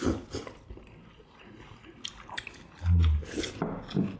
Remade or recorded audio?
recorded